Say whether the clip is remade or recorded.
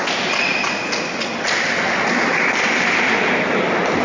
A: recorded